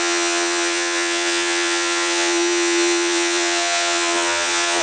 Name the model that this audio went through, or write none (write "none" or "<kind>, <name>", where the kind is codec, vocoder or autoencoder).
vocoder, Vocos